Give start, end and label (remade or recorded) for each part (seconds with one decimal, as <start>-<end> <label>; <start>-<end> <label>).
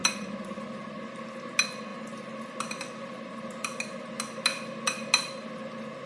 0.0-6.1 recorded